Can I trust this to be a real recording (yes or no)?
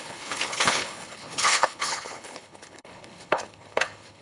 no